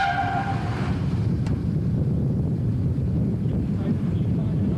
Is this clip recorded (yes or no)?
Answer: no